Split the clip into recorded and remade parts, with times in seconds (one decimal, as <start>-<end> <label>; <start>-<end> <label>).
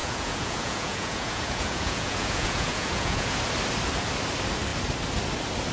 0.0-3.4 remade; 3.4-5.7 recorded